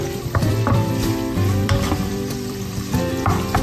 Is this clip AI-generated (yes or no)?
yes